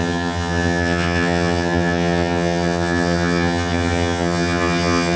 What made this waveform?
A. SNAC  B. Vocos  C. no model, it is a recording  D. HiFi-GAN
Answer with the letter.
D